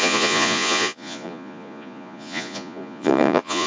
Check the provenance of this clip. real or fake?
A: fake